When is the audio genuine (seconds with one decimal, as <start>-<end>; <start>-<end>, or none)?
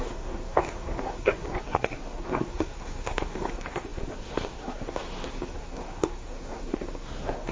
none